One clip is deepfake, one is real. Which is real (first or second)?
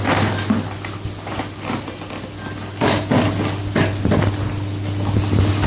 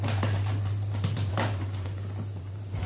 first